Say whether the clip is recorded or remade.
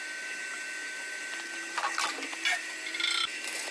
recorded